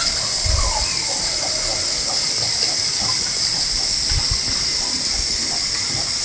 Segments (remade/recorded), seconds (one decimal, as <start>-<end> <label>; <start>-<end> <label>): 0.0-6.2 recorded

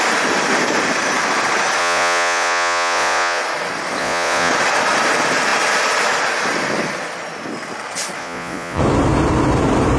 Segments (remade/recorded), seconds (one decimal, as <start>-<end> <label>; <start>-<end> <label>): 0.0-1.8 recorded; 1.8-3.4 remade; 3.4-4.0 recorded; 4.0-4.5 remade; 4.5-8.2 recorded; 8.2-8.8 remade; 8.8-10.0 recorded